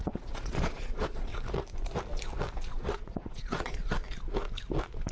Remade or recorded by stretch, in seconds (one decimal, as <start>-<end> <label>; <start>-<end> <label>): 0.0-1.3 remade; 1.3-2.8 recorded; 2.8-3.8 remade; 3.8-5.1 recorded